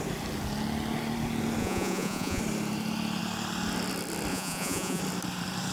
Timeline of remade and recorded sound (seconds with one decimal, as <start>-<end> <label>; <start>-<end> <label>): 0.0-1.6 recorded; 1.6-2.4 remade; 2.4-4.3 recorded; 4.3-5.0 remade; 5.0-5.7 recorded